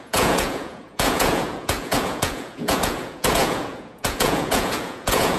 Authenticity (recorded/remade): remade